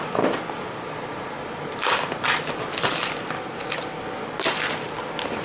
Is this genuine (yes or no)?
yes